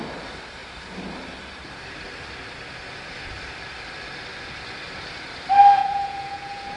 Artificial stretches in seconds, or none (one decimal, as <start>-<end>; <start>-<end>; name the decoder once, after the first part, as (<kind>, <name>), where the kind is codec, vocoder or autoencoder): 5.8-6.8 (vocoder, Vocos)